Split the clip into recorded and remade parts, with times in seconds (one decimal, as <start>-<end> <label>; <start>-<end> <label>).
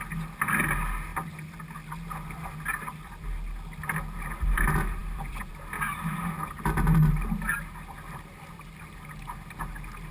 0.0-5.0 recorded; 5.0-5.5 remade; 5.5-10.1 recorded